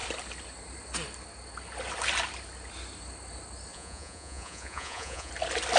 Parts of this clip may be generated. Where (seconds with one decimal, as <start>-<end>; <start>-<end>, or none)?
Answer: 3.7-5.3